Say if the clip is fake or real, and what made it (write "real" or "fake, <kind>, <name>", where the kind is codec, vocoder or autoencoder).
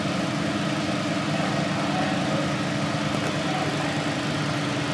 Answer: real